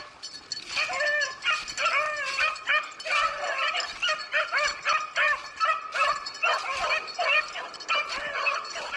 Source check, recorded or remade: recorded